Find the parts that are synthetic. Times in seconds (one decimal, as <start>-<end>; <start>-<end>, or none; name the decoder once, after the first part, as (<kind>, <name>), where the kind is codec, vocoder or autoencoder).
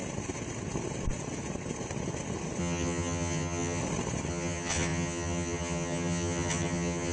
2.6-3.8 (vocoder, HiFi-GAN); 4.3-7.1